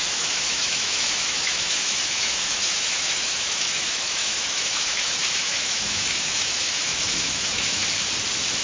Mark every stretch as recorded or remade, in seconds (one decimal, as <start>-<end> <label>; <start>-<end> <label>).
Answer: 0.0-7.8 remade; 7.8-8.6 recorded